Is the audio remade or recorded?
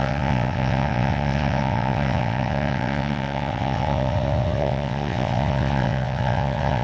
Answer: remade